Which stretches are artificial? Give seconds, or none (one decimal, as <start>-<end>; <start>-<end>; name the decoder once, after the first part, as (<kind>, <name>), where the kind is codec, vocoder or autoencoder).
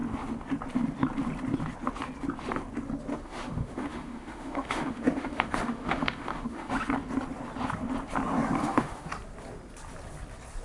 3.1-6.7 (autoencoder, DAC-VAE); 8.6-9.1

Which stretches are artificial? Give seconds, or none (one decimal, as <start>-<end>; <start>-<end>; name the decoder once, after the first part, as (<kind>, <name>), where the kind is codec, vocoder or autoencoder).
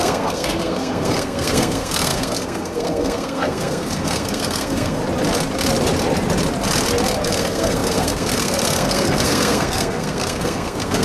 0.0-5.0 (codec, SNAC); 7.2-11.0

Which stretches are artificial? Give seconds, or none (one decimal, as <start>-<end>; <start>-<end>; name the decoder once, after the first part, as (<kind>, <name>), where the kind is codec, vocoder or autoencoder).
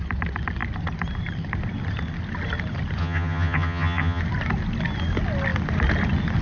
3.0-4.2 (vocoder, HiFi-GAN)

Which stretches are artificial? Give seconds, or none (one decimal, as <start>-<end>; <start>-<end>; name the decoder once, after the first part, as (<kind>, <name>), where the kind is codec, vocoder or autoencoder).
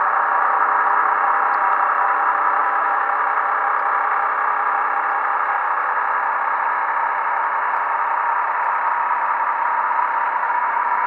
2.6-3.2 (autoencoder, DAC-VAE); 10.4-11.1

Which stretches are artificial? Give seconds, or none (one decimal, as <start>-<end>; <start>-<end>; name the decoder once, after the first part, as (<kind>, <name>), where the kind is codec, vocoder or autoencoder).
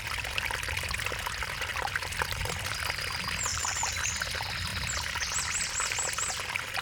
1.7-2.4 (vocoder, BigVGAN v2); 3.5-4.0